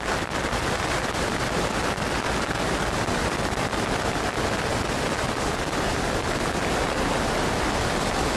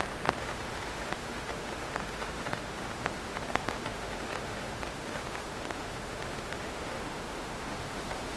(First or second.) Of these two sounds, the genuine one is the first